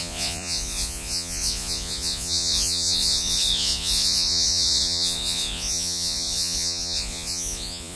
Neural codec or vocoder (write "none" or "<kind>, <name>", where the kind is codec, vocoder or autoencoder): vocoder, Vocos